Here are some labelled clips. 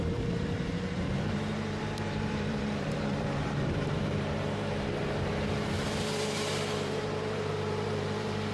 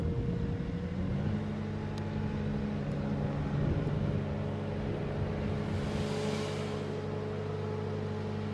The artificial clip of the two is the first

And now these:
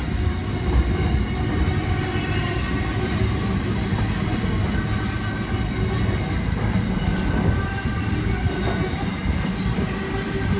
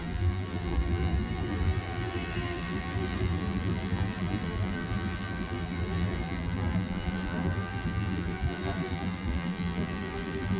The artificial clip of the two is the second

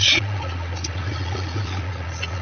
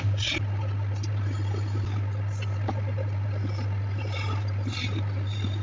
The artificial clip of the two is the first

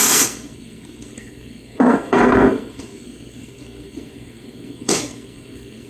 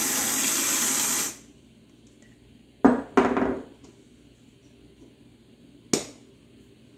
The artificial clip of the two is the first